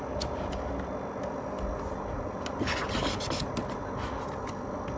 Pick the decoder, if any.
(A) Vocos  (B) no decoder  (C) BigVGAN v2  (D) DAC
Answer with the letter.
B